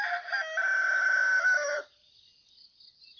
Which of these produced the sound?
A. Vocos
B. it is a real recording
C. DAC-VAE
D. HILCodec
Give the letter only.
B